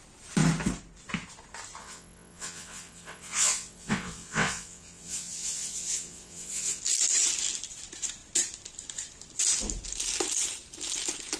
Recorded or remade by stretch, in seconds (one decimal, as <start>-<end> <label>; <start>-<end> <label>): 0.0-1.8 recorded; 1.8-6.8 remade; 6.8-11.4 recorded